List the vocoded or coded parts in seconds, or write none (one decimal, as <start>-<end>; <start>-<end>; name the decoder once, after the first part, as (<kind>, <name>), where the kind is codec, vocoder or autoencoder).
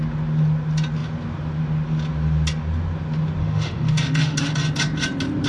3.4-4.5 (autoencoder, DAC-VAE)